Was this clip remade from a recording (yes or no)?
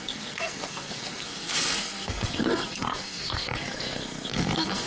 yes